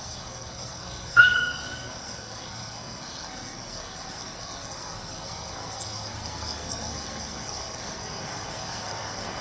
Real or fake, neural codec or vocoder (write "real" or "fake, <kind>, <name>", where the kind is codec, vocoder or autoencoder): fake, codec, SNAC